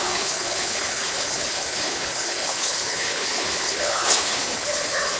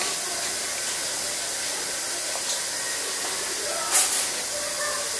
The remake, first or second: first